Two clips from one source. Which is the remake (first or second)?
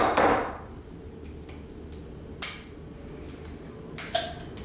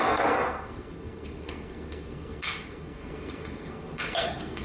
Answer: second